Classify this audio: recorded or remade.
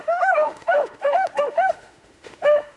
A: remade